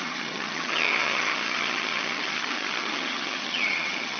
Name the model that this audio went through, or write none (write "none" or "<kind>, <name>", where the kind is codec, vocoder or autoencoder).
vocoder, HiFi-GAN